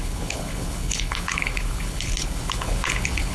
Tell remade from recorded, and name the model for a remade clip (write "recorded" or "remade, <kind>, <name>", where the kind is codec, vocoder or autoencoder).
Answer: remade, codec, HILCodec